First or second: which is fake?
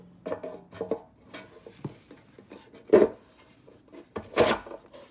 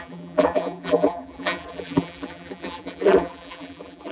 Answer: second